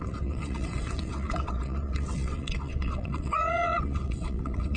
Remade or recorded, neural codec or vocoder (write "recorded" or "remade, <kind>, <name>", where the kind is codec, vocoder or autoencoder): remade, vocoder, WaveNeXt